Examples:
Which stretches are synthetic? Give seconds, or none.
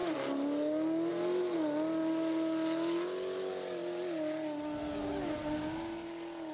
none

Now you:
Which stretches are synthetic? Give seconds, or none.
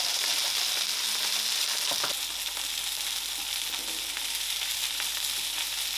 0.0-0.4 (vocoder, BigVGAN v2); 4.0-6.0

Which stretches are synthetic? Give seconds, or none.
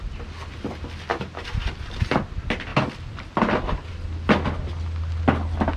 1.1-2.2 (vocoder, BigVGAN v2); 2.7-3.9